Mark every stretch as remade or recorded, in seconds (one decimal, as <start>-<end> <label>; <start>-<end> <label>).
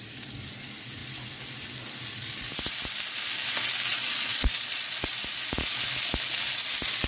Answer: 0.0-3.9 recorded; 3.9-5.1 remade; 5.1-7.1 recorded